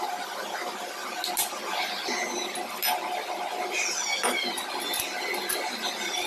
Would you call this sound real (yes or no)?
yes